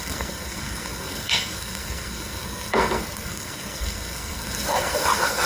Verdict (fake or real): fake